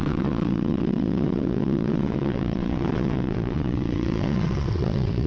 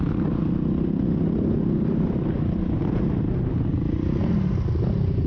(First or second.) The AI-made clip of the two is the first